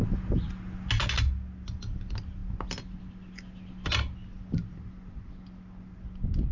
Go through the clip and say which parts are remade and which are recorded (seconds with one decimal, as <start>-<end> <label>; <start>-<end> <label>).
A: 0.0-6.5 recorded